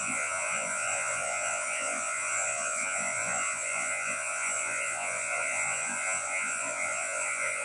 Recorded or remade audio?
remade